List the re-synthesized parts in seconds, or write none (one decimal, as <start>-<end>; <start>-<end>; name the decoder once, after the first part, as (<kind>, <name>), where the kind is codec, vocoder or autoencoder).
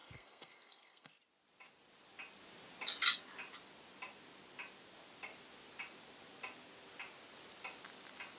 0.0-1.1 (codec, SNAC)